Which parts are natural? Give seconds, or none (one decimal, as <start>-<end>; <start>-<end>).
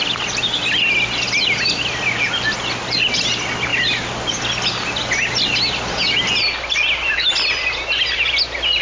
0.0-8.8